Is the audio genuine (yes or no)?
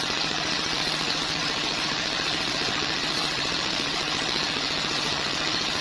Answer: no